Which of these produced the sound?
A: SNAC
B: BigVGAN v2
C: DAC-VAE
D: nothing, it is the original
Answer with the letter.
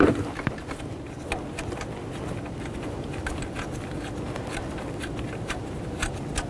D